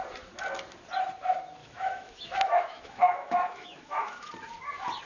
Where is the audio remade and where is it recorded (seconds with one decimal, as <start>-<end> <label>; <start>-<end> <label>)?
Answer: 0.0-1.6 recorded; 1.6-4.3 remade; 4.3-5.1 recorded